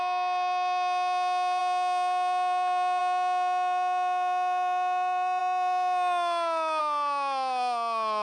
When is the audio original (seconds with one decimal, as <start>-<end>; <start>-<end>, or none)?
0.0-8.2